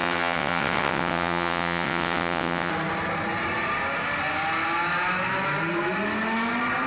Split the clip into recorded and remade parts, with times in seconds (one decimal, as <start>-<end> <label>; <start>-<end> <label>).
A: 0.0-2.7 remade; 2.7-6.9 recorded